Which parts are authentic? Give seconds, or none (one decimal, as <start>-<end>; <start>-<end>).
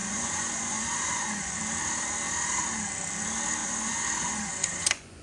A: 1.6-3.6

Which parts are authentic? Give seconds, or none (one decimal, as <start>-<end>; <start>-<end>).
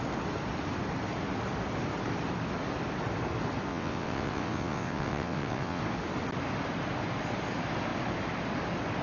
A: 0.0-3.7; 5.8-9.0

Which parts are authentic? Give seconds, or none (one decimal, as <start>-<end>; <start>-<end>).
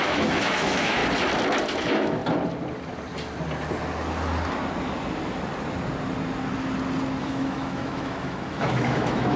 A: 1.0-1.8; 2.2-7.2